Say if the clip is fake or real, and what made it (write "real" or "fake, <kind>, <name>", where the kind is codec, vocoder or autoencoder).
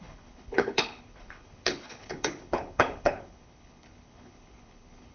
fake, codec, HILCodec